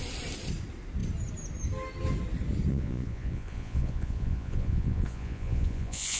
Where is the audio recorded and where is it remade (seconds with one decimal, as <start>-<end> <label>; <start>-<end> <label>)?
0.0-2.7 recorded; 2.7-6.2 remade